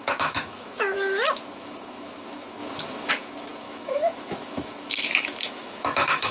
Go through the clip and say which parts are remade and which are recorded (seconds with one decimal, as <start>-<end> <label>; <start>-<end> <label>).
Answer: 0.0-6.3 remade